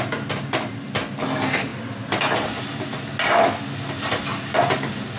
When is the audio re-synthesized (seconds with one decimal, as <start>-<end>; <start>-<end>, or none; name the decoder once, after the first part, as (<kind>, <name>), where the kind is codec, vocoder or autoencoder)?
none